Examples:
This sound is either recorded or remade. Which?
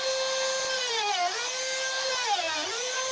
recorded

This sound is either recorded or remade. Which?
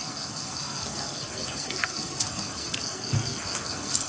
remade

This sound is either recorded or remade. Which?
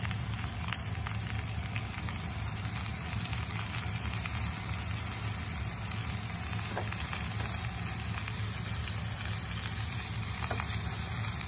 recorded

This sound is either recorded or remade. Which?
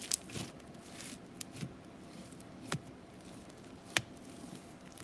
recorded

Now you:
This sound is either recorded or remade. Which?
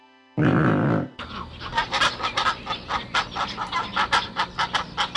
recorded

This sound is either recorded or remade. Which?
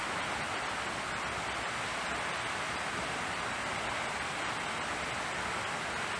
recorded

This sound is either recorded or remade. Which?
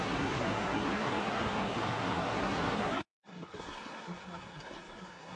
remade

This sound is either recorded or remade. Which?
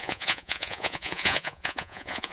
remade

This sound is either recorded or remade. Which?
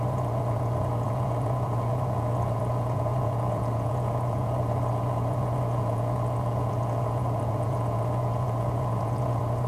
remade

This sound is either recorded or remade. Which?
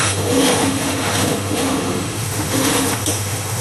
remade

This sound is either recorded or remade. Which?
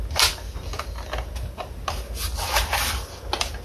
recorded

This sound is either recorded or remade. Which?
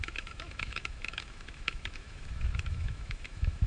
remade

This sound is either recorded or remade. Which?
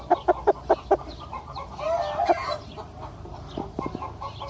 recorded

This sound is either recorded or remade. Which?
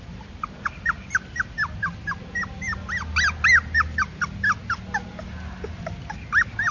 recorded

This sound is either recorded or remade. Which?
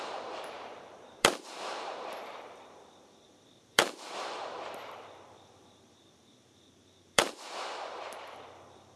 remade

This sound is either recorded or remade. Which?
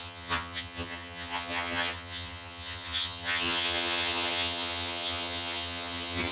remade